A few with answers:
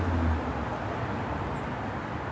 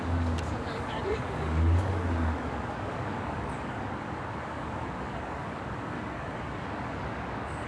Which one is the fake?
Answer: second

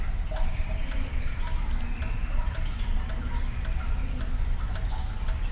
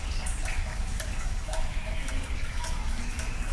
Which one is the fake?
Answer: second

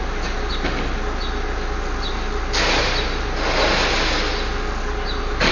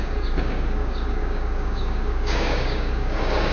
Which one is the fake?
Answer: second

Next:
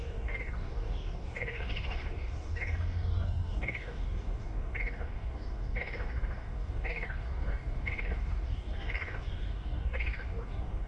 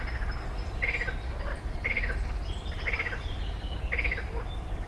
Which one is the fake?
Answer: first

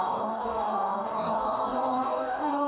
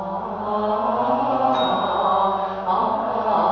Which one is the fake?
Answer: first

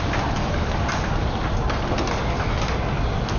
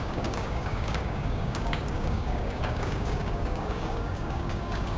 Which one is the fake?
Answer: second